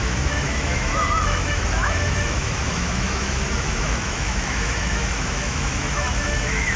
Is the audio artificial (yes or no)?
yes